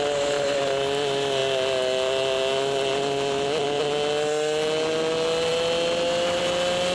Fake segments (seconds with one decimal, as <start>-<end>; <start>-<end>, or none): none